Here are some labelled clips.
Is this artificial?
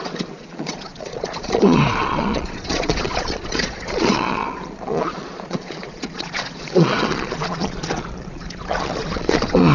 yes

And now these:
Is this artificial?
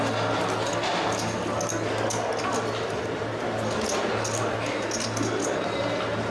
no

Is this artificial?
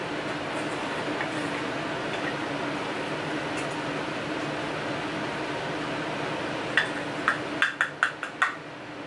no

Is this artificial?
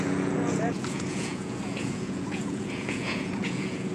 yes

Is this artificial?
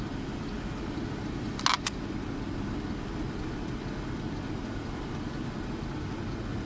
no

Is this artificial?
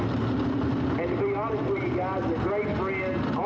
no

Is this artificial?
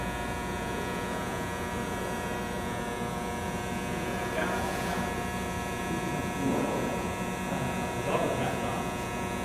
yes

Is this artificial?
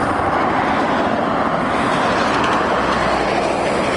no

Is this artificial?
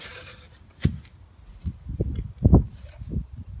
no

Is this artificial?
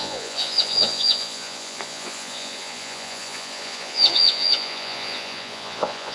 yes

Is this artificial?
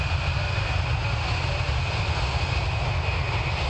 no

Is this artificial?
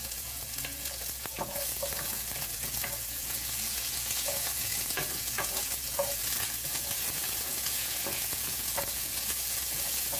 yes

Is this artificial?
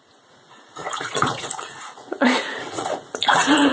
yes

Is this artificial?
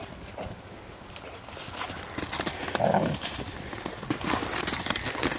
no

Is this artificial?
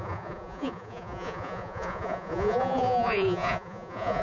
yes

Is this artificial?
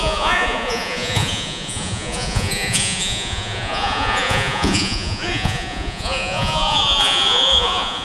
yes